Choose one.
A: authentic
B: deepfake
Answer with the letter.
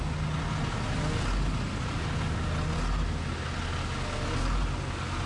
A